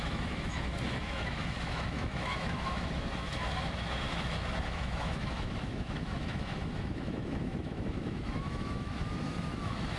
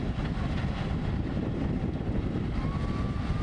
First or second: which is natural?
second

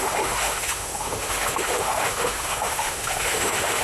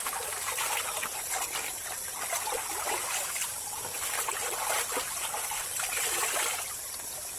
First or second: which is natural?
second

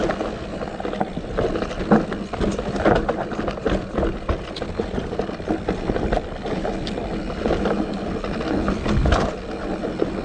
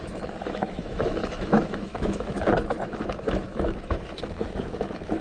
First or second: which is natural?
first